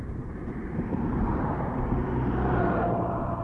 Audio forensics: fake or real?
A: fake